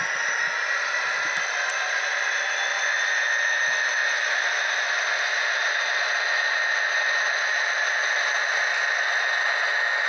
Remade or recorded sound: recorded